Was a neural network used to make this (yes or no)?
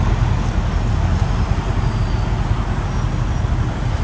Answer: no